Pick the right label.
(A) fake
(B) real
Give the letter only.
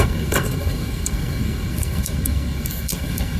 A